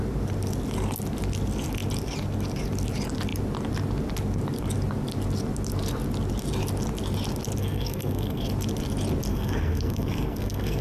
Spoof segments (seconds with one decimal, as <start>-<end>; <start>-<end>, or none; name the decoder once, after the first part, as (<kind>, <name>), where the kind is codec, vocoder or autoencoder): 7.6-8.5 (codec, SNAC); 9.3-10.8